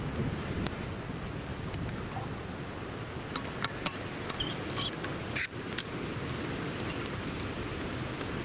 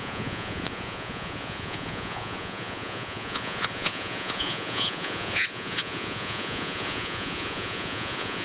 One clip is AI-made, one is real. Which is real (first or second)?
first